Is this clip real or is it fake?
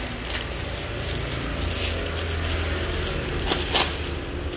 real